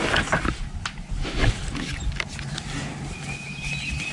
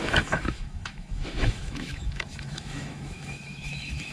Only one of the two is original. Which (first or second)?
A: first